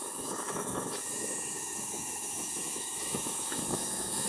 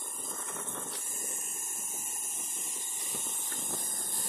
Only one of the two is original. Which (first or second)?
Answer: second